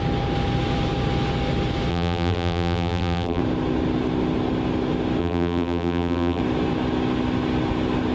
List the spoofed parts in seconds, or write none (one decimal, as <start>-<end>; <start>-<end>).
1.9-3.4; 5.2-6.4